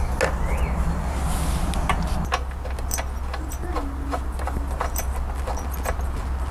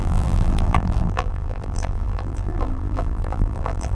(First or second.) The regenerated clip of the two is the second